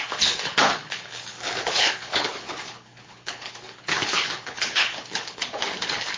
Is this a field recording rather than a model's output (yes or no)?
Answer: no